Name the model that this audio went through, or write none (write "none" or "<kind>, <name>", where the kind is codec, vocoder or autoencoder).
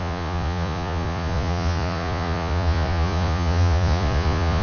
vocoder, Vocos